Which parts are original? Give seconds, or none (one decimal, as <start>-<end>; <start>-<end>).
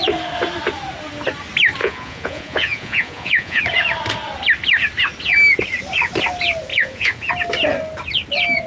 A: 0.0-1.8; 3.6-6.7; 7.3-8.7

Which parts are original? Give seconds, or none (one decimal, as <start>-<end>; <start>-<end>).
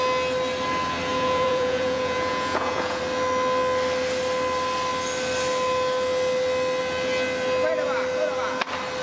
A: 0.0-1.1; 3.0-9.0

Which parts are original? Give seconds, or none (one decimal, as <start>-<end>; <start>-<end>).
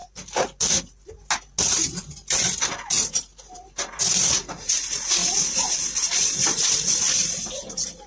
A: 0.0-8.1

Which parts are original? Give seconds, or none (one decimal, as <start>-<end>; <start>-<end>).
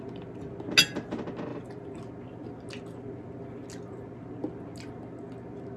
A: 0.0-1.5; 2.0-5.8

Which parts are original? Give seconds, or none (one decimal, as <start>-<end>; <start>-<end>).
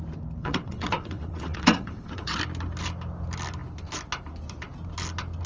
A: 0.0-0.4; 2.4-5.5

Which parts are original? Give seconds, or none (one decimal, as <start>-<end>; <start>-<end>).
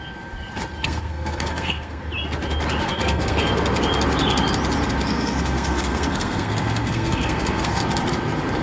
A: 0.0-0.8; 2.0-2.8; 3.5-5.1; 7.8-8.6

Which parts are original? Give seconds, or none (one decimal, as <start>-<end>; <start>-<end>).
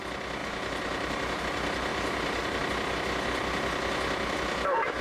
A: 0.0-0.4; 1.4-1.9; 2.7-5.0